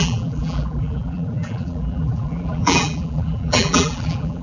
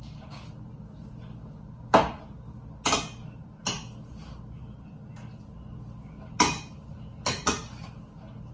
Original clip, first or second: second